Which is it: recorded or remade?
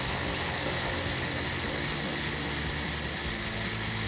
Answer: recorded